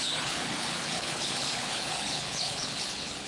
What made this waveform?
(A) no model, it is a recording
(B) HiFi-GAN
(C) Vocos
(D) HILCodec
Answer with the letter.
D